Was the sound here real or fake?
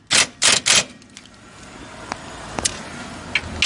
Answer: real